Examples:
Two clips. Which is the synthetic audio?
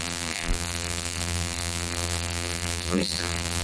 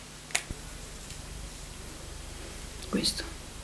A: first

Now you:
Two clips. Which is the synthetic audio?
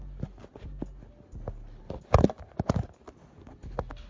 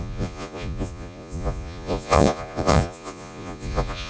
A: second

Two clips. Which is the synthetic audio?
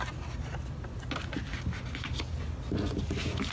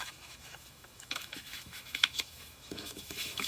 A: second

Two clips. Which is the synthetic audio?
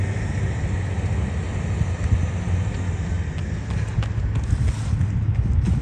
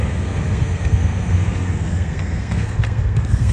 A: second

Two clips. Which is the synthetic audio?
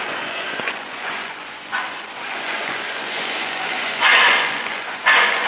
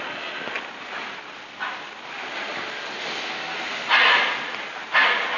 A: first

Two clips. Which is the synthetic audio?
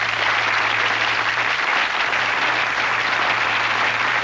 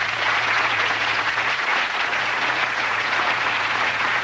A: second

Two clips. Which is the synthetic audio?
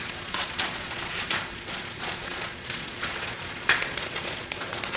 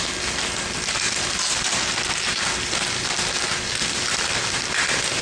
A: first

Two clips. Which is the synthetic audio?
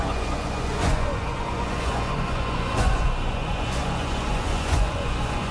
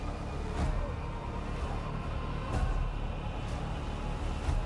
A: first